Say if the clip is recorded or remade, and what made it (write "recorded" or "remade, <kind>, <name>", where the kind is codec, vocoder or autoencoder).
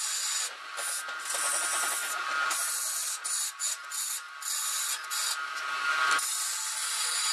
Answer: recorded